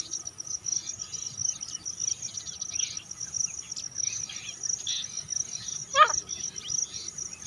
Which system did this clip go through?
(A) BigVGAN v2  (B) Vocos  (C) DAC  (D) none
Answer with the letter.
D